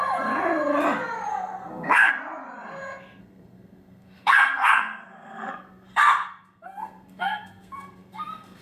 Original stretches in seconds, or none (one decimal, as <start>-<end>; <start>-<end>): 0.0-1.3; 2.1-3.2